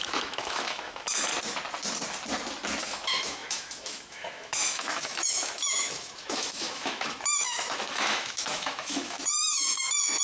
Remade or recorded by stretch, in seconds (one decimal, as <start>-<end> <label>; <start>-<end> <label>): 0.0-1.3 remade; 1.3-2.8 recorded; 2.8-10.2 remade

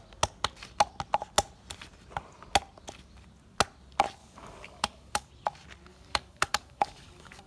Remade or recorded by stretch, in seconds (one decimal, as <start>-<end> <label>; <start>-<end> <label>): 0.0-4.2 recorded; 4.2-5.3 remade; 5.3-5.9 recorded; 5.9-7.5 remade

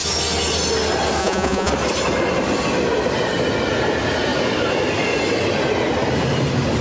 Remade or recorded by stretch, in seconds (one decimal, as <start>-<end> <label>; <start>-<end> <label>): 0.0-1.2 recorded; 1.2-1.7 remade; 1.7-6.8 recorded

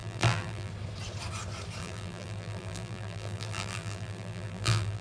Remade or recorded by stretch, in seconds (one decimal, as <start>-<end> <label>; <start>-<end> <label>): 0.0-0.7 remade; 0.7-1.8 recorded; 1.8-5.0 remade

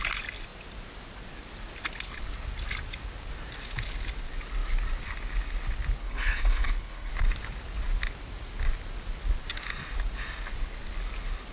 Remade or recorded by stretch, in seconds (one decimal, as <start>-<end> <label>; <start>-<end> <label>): 0.0-6.0 recorded; 6.0-7.1 remade; 7.1-11.5 recorded

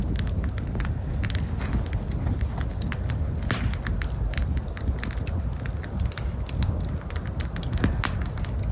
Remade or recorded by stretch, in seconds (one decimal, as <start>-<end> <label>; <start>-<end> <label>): 0.0-8.7 recorded

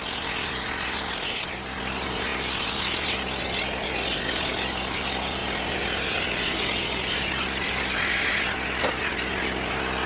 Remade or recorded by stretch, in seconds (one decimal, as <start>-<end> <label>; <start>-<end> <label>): 0.0-10.1 recorded